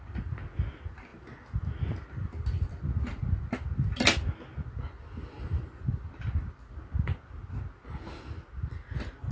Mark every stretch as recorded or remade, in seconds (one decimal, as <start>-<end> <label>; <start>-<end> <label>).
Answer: 0.0-9.3 recorded